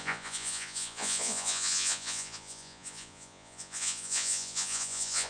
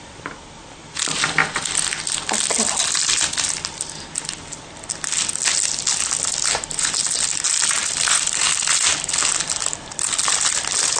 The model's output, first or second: first